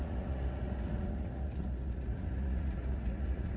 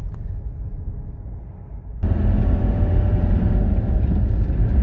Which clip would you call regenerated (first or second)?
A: first